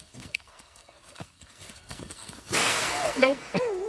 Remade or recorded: remade